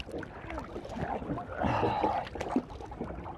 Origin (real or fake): real